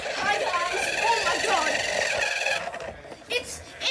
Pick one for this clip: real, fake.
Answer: real